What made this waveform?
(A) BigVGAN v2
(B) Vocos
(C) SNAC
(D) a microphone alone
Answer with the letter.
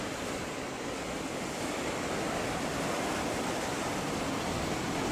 D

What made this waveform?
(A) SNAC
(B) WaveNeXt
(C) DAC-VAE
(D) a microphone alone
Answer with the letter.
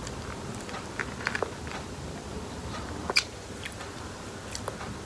D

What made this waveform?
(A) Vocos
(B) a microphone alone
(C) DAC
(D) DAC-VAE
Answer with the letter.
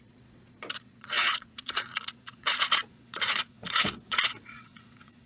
A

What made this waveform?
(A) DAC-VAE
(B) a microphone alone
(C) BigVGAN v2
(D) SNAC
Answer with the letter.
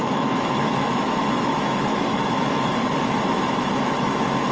A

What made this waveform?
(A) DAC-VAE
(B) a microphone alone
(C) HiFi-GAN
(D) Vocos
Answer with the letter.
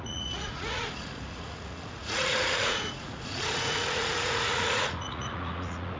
D